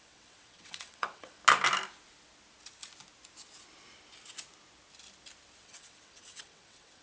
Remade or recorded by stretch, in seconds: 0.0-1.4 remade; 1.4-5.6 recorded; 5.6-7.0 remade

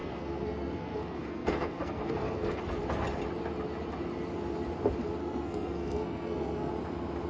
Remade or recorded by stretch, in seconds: 0.0-2.6 remade; 2.6-5.2 recorded; 5.2-6.7 remade; 6.7-7.3 recorded

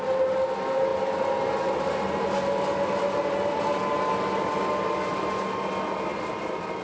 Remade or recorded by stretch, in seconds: 0.0-6.8 recorded

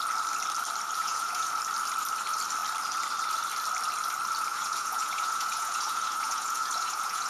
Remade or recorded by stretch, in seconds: 0.0-1.0 recorded; 1.0-1.5 remade; 1.5-4.5 recorded; 4.5-7.3 remade

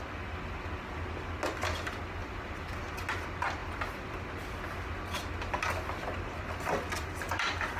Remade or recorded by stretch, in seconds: 0.0-2.2 recorded; 2.2-2.8 remade; 2.8-3.6 recorded; 3.6-4.2 remade; 4.2-7.8 recorded